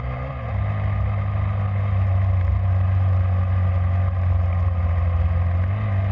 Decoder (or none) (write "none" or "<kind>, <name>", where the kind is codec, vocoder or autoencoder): none